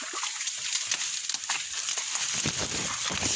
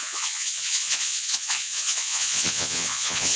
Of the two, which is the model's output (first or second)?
second